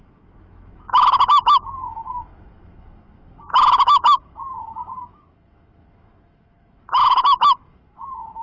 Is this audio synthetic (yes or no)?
yes